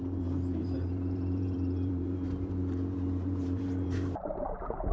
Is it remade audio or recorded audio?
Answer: remade